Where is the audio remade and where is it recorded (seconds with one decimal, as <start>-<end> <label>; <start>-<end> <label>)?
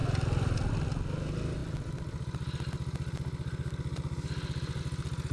0.0-5.3 recorded